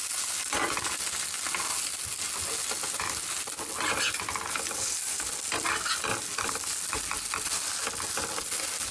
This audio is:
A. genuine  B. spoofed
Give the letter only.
A